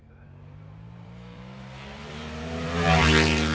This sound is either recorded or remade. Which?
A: remade